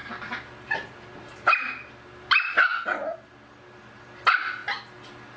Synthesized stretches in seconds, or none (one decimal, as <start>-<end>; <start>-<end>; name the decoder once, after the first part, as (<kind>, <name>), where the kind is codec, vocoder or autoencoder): none